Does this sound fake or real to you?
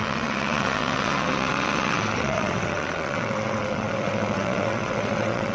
fake